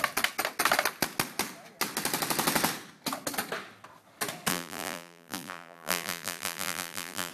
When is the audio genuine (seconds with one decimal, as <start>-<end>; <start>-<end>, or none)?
0.0-4.5